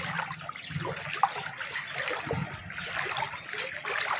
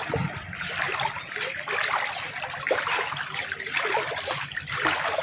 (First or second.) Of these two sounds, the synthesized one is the second